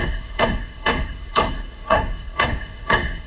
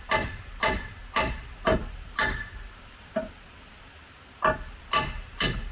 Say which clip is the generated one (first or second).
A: first